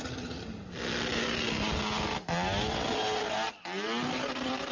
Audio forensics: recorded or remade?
recorded